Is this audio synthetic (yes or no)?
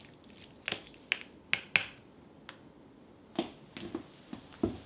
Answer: no